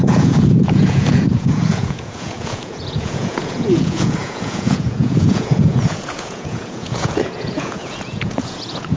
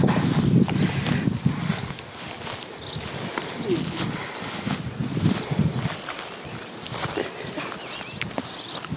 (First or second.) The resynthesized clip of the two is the first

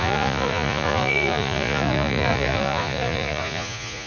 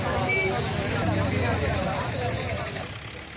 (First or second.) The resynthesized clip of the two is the first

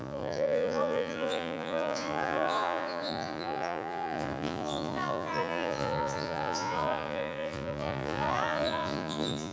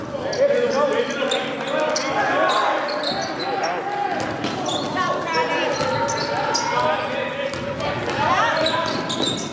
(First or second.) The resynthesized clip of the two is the first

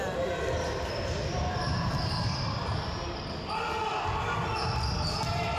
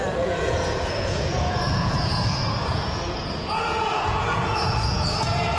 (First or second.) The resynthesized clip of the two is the second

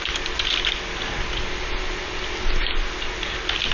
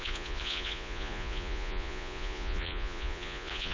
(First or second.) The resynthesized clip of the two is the second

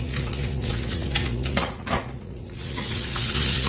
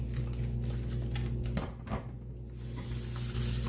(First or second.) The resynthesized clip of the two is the first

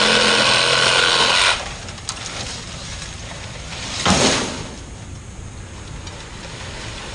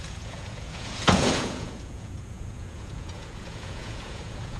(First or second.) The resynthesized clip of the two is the second